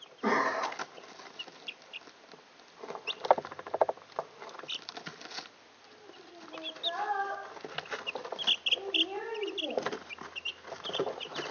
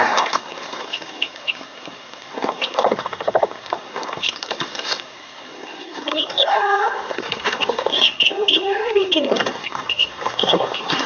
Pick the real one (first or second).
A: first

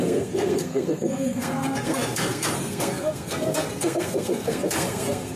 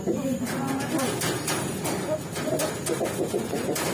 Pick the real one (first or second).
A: second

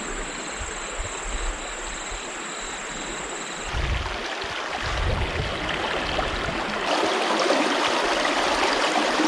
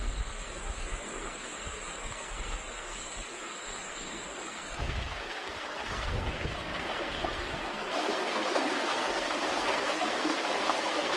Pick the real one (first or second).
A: first